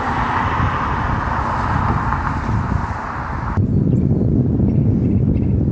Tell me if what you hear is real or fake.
real